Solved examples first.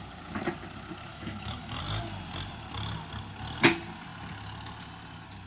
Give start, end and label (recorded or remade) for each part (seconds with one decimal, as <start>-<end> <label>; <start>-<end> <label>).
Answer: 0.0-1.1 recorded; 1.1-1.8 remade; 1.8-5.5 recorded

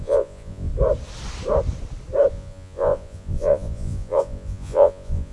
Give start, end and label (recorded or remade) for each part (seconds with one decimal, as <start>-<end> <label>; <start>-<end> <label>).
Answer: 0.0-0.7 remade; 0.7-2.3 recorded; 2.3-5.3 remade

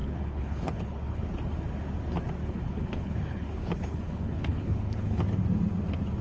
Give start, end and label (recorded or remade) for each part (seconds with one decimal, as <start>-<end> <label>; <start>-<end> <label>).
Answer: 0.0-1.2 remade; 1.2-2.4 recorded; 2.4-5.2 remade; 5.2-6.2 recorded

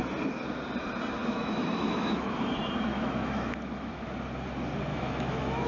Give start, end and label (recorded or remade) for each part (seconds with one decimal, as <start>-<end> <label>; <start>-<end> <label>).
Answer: 0.0-1.2 recorded; 1.2-2.5 remade; 2.5-2.9 recorded; 2.9-4.1 remade; 4.1-4.9 recorded; 4.9-5.7 remade

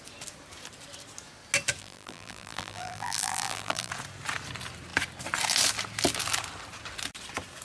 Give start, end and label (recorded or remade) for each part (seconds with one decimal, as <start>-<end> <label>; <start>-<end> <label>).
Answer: 0.0-1.8 recorded; 1.8-3.9 remade; 3.9-7.6 recorded